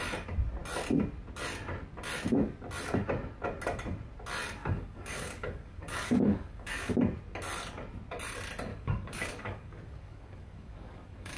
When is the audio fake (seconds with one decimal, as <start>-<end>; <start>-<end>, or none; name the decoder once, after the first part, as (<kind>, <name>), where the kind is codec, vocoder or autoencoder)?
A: 4.6-6.9 (codec, DAC); 8.7-11.4